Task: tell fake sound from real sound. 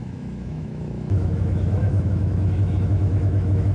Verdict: fake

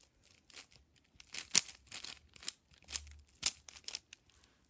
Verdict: real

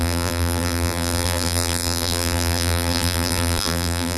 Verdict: fake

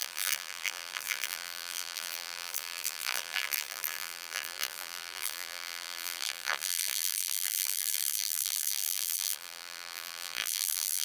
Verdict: fake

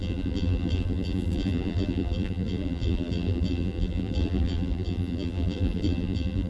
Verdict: fake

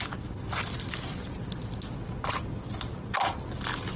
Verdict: real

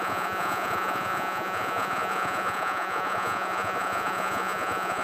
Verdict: fake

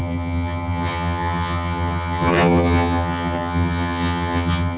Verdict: fake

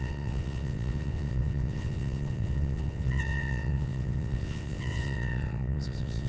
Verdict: fake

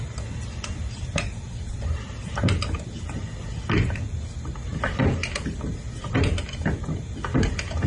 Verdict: real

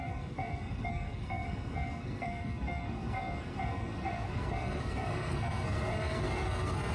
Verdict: fake